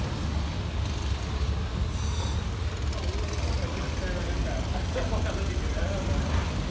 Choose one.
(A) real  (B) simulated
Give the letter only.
A